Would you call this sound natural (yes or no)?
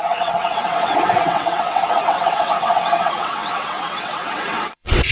no